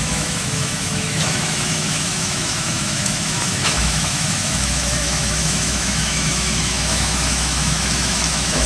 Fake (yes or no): yes